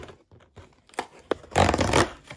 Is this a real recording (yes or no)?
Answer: yes